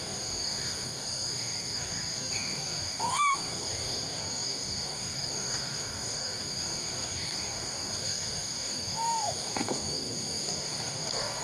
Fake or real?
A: fake